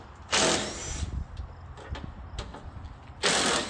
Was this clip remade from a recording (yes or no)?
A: no